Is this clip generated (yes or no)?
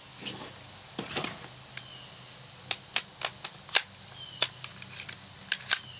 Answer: no